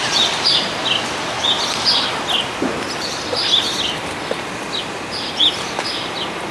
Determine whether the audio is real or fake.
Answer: real